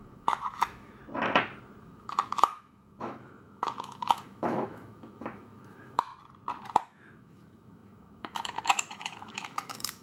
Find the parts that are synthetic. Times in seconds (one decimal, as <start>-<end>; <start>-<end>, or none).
0.0-1.0; 1.8-6.1; 6.8-10.0